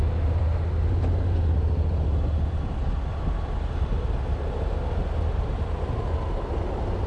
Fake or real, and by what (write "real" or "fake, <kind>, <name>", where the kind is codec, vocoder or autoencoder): real